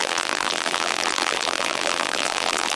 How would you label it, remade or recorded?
remade